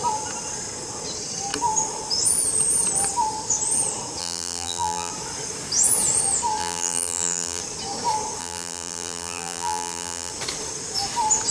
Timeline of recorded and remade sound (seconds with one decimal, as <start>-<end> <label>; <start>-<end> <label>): 0.0-4.2 recorded; 4.2-5.1 remade; 5.1-6.6 recorded; 6.6-7.6 remade; 7.6-8.4 recorded; 8.4-10.3 remade; 10.3-11.5 recorded